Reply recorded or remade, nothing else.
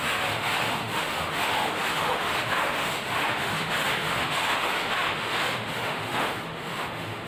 remade